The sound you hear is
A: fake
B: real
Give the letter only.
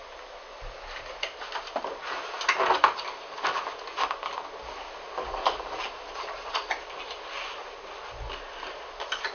B